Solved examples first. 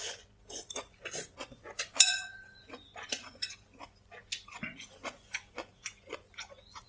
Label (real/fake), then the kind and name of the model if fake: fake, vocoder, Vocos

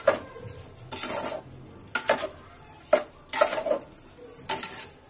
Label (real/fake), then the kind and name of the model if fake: real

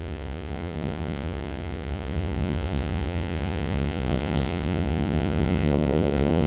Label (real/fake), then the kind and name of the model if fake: fake, vocoder, Vocos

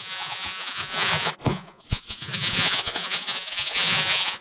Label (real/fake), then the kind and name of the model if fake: fake, vocoder, Vocos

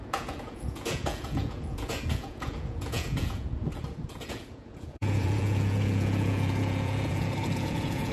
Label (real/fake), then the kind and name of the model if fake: fake, vocoder, Vocos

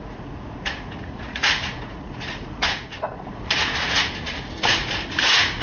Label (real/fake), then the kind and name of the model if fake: fake, vocoder, Vocos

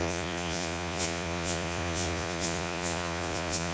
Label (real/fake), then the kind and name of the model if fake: fake, vocoder, Vocos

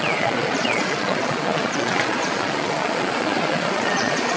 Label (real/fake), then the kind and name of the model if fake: fake, vocoder, Vocos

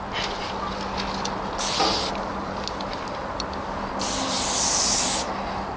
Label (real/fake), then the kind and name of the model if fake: real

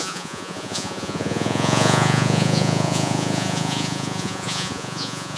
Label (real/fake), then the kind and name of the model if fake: fake, vocoder, Vocos